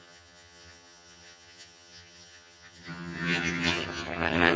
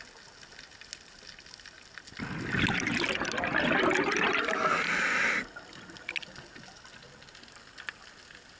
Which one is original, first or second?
second